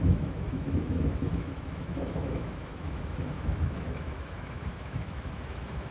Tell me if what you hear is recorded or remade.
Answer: remade